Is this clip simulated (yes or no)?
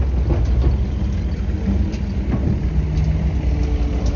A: no